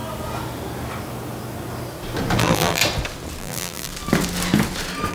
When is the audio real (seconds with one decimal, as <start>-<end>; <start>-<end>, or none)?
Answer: 0.0-2.4; 2.8-3.4; 3.9-5.1

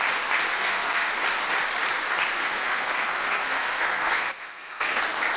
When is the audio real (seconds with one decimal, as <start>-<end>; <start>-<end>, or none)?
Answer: 0.0-0.5; 1.1-2.4; 5.0-5.4

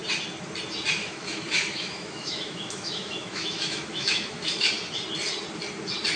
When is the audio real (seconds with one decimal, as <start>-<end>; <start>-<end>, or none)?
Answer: 0.0-1.0; 4.7-6.2

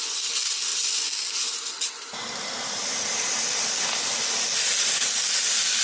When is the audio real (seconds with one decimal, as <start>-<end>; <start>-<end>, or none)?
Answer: 0.0-5.8

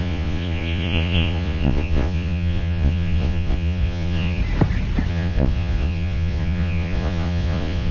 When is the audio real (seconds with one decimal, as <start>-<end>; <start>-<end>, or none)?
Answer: 4.4-5.1